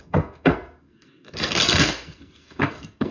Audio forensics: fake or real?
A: fake